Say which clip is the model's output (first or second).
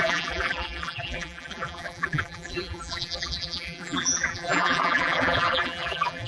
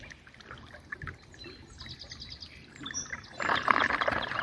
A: first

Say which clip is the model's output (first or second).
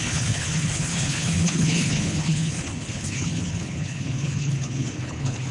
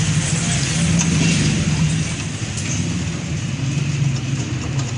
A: first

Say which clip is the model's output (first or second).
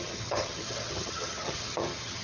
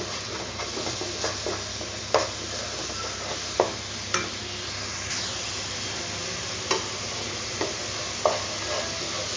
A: first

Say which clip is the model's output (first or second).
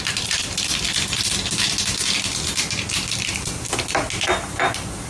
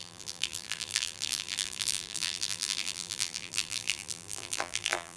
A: second